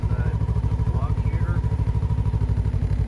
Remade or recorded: remade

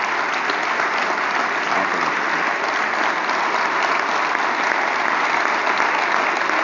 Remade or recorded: recorded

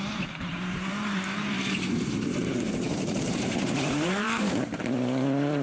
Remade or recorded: remade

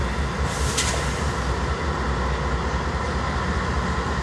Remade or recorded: recorded